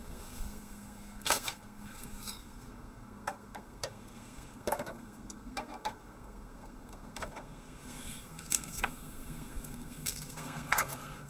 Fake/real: fake